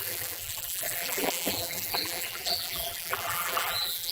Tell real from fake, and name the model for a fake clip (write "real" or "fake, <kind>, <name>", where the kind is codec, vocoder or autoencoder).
fake, vocoder, BigVGAN v2